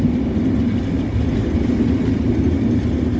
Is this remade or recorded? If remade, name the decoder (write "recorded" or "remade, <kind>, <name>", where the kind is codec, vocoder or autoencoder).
recorded